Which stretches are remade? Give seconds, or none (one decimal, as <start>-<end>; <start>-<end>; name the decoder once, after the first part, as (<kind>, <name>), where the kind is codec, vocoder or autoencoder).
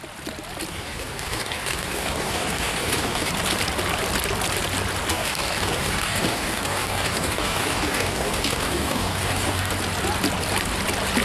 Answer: 0.7-3.3 (codec, DAC); 5.1-9.7